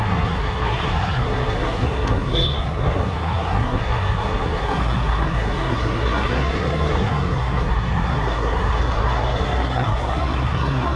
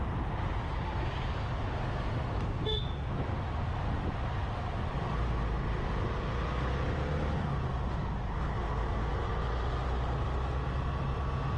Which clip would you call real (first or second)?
second